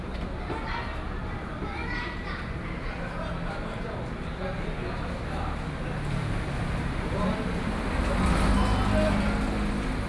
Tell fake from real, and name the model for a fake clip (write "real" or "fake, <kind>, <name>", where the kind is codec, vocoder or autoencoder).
real